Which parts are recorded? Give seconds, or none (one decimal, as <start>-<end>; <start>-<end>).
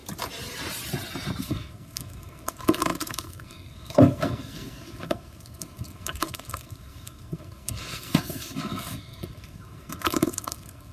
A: 0.0-1.4